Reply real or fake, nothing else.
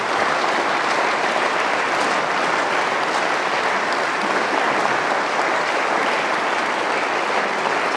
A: real